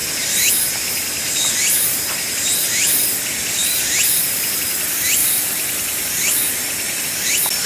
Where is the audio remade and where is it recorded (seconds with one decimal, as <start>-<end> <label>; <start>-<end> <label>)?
0.0-3.4 recorded; 3.4-4.6 remade; 4.6-7.7 recorded